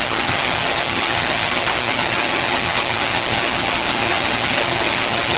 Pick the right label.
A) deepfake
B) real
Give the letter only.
A